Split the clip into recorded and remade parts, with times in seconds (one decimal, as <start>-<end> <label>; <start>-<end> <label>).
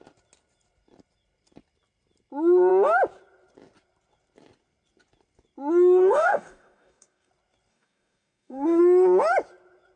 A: 0.0-6.0 recorded; 6.0-7.3 remade; 7.3-7.7 recorded; 7.7-8.8 remade; 8.8-10.0 recorded